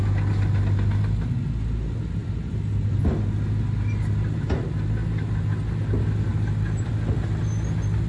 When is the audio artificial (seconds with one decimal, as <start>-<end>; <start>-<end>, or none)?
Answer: 6.3-6.9